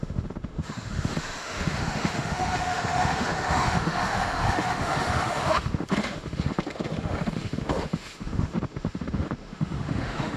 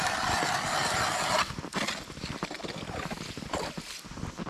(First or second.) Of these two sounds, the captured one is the second